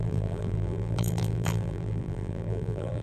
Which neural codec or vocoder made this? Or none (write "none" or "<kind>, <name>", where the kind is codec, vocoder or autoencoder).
vocoder, BigVGAN v2